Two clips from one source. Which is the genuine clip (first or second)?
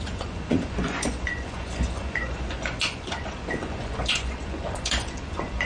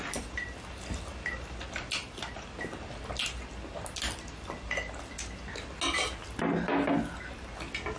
second